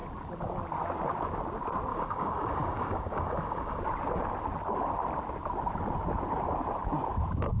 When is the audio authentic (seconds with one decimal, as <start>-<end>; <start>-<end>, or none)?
0.0-1.9; 3.8-7.6